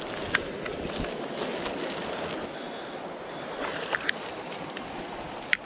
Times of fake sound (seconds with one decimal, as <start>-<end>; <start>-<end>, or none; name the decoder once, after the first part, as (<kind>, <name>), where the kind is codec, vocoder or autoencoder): none